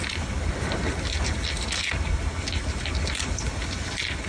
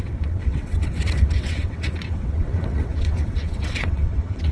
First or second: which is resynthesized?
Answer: second